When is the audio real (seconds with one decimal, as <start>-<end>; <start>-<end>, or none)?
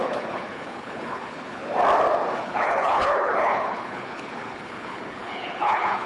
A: 1.6-2.4